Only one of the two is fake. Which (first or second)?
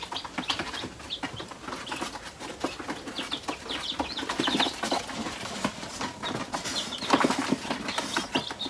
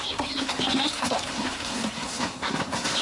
second